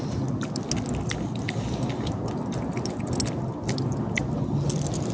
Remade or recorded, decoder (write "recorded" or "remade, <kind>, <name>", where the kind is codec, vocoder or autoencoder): recorded